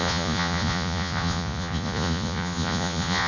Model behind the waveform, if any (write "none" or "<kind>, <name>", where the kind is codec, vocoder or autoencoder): vocoder, Vocos